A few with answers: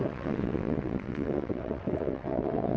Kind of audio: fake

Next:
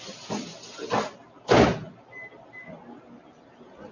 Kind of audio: real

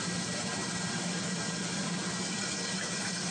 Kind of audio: real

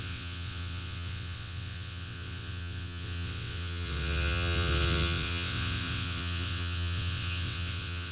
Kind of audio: fake